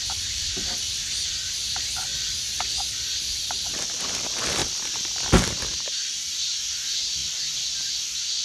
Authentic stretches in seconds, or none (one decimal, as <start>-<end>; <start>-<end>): 0.0-8.4